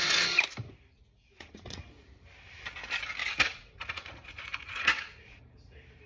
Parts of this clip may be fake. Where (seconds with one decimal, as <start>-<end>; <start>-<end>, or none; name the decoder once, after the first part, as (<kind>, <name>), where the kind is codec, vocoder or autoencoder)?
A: 0.9-1.9 (vocoder, Vocos); 3.2-5.4